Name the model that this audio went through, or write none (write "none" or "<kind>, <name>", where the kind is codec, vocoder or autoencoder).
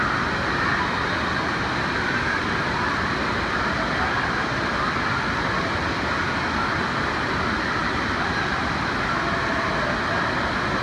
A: none